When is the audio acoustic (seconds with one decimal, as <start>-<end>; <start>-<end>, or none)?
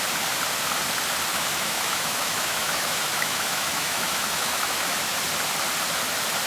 0.0-1.3; 5.2-6.5